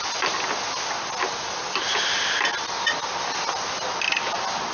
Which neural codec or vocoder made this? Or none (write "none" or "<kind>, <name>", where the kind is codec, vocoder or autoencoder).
none